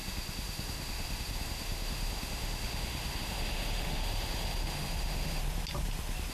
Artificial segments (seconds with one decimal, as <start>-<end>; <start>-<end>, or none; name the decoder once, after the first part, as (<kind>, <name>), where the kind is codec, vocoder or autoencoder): 0.0-5.4 (autoencoder, DAC-VAE)